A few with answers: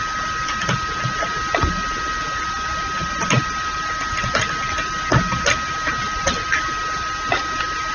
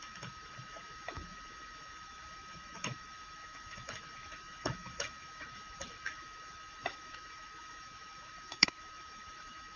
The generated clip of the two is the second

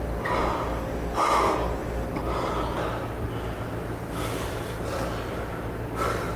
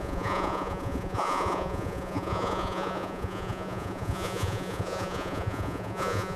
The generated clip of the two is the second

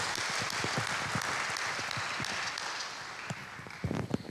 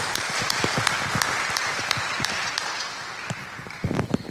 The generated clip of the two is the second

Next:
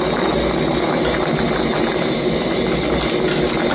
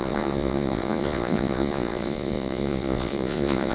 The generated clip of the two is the second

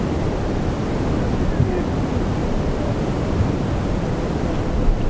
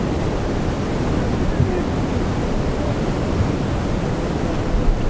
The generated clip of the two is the first